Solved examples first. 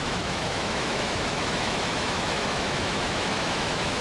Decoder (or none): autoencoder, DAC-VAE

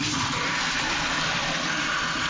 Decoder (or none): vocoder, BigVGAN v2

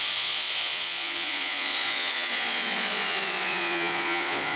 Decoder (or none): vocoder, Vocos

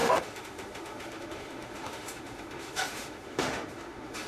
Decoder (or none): autoencoder, DAC-VAE